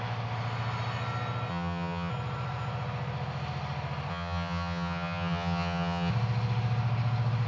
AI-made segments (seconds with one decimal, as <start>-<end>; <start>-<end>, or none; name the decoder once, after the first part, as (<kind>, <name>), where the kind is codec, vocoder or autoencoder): 1.5-2.1 (vocoder, HiFi-GAN); 4.1-6.1